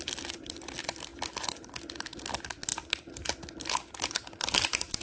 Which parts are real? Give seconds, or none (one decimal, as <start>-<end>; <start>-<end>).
0.0-5.0